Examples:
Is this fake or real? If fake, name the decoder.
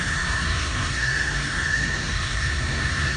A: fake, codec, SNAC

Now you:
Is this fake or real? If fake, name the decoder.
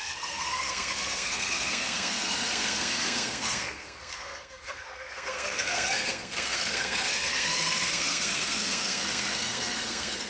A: fake, codec, SNAC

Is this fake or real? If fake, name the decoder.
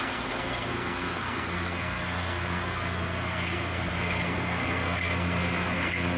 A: fake, codec, SNAC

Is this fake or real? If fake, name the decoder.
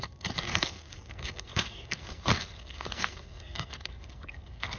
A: fake, codec, SNAC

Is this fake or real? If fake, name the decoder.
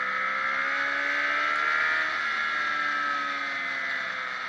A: real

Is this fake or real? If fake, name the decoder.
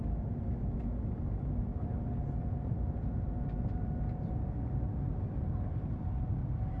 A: real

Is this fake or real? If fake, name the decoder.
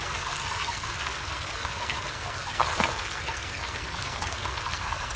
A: fake, codec, SNAC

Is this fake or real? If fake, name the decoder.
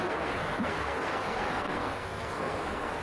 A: fake, codec, SNAC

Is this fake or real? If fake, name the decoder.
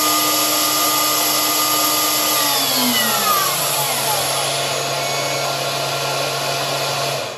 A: real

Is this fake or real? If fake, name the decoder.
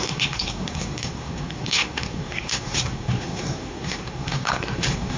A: fake, codec, SNAC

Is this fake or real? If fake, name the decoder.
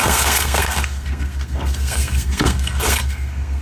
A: fake, codec, SNAC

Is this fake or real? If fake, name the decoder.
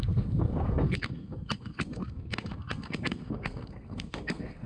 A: fake, codec, SNAC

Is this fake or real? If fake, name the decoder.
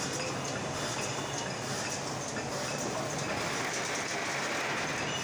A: real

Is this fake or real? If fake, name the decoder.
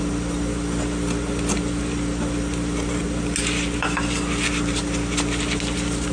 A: real